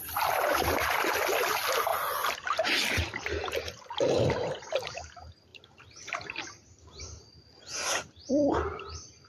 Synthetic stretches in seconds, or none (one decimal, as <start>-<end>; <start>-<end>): none